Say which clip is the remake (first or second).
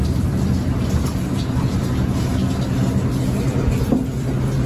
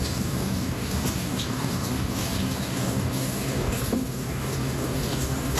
second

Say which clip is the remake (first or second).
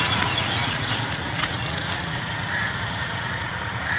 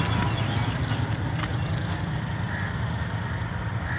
first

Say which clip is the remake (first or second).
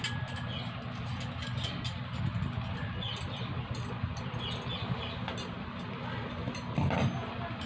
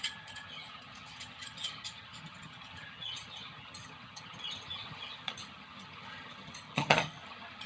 second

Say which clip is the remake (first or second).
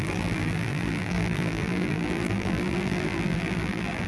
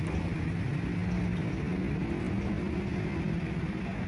first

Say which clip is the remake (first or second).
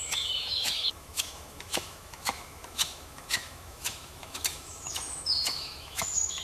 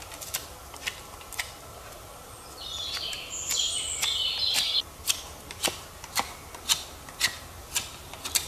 first